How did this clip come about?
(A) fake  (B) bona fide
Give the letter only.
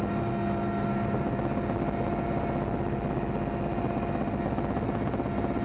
B